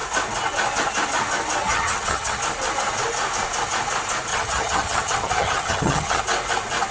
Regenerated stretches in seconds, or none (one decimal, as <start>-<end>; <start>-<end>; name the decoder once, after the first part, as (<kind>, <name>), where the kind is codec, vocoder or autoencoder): 1.6-2.4 (vocoder, HiFi-GAN); 4.3-6.2